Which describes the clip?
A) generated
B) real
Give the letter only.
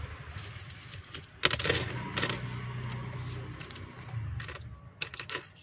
B